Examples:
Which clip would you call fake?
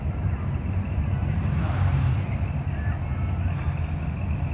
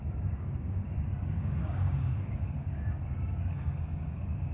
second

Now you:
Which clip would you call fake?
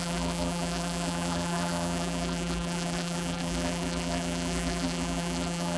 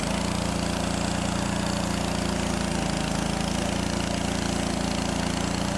first